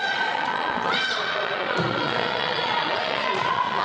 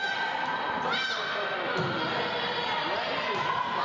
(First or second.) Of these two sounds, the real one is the second